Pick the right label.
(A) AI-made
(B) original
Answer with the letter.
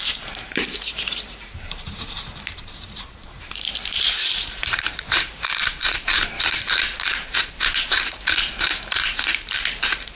A